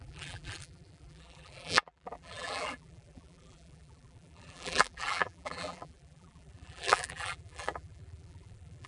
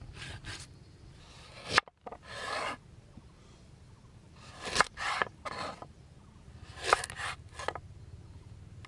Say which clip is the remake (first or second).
first